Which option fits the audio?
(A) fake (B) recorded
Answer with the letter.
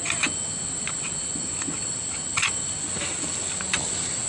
B